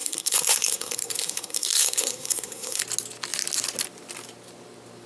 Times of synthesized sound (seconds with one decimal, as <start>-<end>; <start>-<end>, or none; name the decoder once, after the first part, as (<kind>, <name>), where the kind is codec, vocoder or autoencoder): 0.0-2.8 (codec, SNAC)